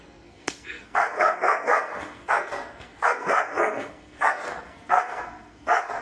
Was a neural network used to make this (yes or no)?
yes